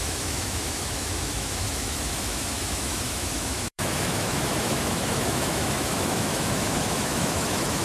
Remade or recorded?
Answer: remade